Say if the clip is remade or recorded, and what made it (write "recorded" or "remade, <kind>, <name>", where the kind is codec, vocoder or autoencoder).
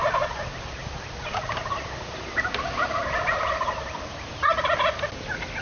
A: recorded